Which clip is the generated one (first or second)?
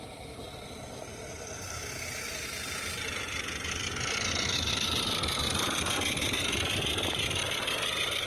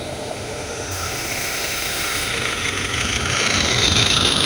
second